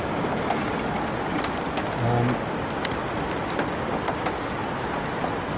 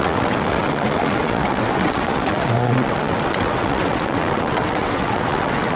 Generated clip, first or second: second